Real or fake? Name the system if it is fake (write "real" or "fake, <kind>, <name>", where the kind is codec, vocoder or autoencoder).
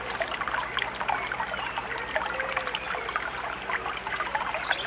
real